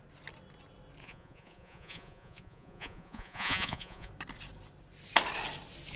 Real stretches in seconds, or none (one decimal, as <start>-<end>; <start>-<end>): 0.0-1.0; 4.1-6.0